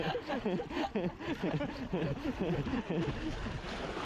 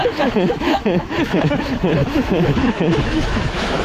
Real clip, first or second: first